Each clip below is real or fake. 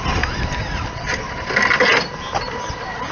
real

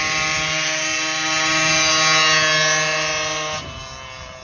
real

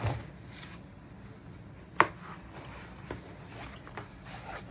real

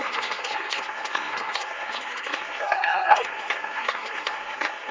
fake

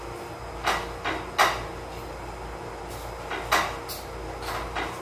real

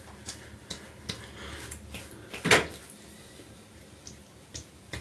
real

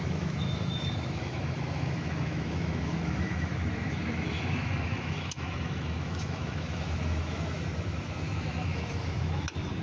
fake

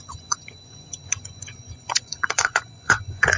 fake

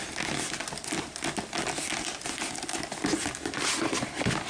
real